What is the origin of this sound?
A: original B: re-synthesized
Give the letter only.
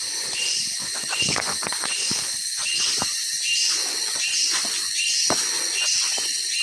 B